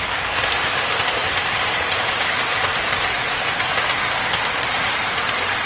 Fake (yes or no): no